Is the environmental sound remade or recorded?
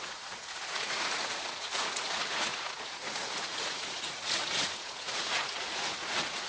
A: remade